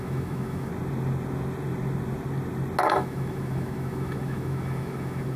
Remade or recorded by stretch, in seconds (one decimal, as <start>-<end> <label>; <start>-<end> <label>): 0.0-0.7 remade; 0.7-2.8 recorded; 2.8-5.4 remade